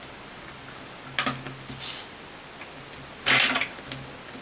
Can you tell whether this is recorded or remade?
recorded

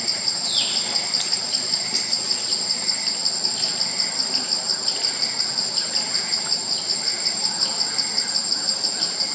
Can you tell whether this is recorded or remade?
recorded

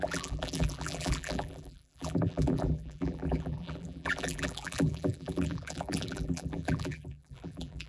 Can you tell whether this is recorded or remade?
remade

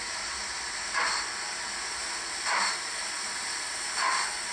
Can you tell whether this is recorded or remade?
recorded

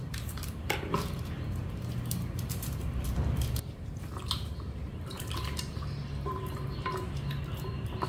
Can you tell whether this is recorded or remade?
remade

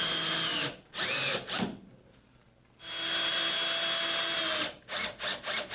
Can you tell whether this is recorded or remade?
recorded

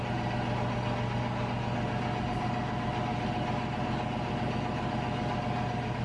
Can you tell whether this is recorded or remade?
recorded